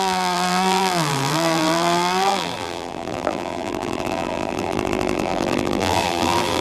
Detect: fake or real fake